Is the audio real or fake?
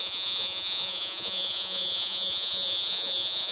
fake